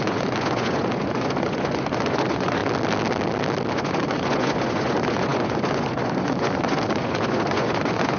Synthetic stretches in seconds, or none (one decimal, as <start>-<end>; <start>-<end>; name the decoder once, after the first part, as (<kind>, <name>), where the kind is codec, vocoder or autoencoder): 0.0-2.6 (vocoder, Vocos); 3.7-8.2